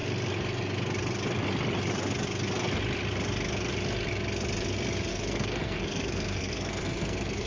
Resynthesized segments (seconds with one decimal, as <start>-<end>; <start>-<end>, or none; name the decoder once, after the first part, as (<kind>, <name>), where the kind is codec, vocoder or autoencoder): 5.1-7.5 (codec, SNAC)